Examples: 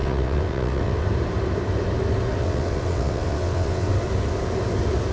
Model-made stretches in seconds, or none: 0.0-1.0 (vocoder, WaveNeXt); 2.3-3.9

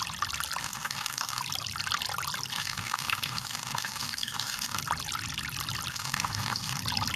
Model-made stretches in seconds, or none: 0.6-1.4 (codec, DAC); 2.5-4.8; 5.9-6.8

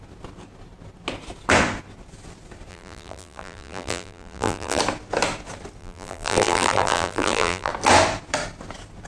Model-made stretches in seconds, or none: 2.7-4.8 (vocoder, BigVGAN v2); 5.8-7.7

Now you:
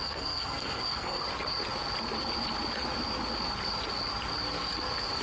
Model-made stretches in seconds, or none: 0.0-1.2 (codec, SNAC)

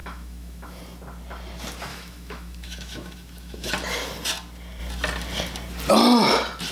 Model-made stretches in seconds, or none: 0.0-0.8 (autoencoder, DAC-VAE); 1.9-3.7

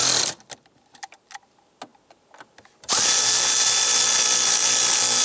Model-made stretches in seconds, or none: none